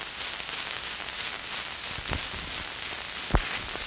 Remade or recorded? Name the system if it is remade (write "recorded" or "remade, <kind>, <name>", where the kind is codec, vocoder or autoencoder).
recorded